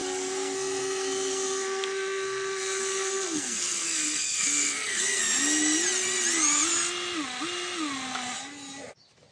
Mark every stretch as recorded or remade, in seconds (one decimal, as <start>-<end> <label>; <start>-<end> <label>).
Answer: 0.0-5.2 remade; 5.2-9.3 recorded